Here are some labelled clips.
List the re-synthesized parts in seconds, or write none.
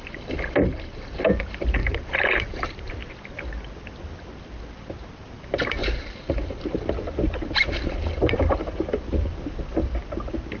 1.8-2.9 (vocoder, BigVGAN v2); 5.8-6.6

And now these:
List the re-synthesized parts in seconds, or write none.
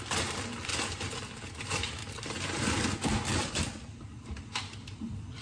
3.3-4.5 (vocoder, BigVGAN v2)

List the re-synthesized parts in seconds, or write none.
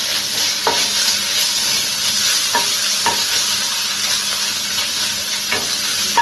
none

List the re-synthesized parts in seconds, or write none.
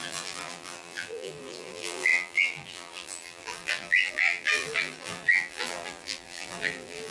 0.0-7.1 (vocoder, BigVGAN v2)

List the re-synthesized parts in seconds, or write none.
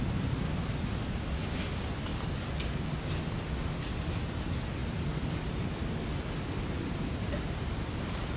none